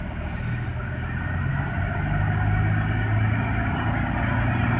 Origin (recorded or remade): recorded